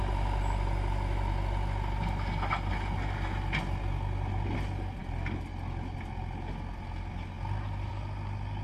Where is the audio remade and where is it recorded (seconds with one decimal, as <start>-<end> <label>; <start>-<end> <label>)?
0.0-8.6 recorded